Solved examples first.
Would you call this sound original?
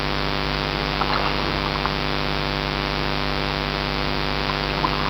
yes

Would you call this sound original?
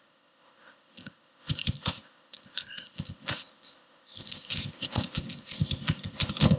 no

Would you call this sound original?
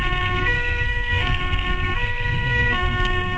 no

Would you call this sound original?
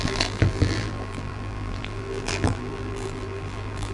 no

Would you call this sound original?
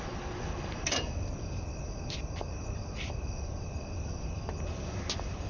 yes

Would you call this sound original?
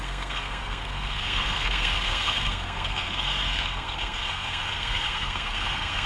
no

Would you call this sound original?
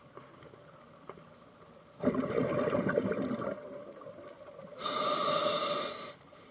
yes